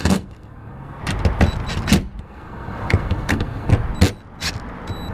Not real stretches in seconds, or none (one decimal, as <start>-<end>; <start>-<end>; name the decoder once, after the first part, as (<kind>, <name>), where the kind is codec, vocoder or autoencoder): 0.0-1.0 (codec, SNAC); 2.2-3.7

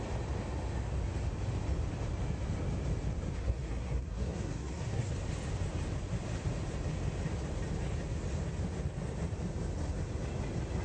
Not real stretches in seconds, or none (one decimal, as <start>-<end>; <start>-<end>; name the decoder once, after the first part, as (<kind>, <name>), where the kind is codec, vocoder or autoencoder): 3.4-5.1 (codec, SNAC)

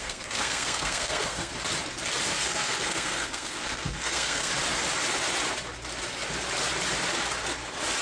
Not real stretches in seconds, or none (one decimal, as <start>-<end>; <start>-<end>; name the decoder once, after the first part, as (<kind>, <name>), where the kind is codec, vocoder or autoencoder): 0.0-1.5 (codec, SNAC); 2.4-4.5

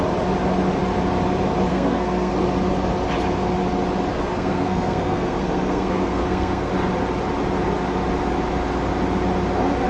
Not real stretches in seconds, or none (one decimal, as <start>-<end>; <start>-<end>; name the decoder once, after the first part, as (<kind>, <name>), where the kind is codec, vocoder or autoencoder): 1.7-2.3 (codec, SNAC); 4.1-6.7

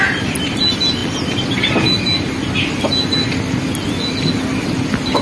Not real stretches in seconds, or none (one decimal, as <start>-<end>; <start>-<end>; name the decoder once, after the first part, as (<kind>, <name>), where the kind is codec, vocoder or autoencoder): none